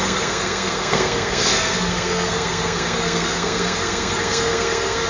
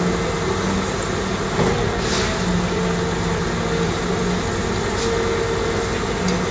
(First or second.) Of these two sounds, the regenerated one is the first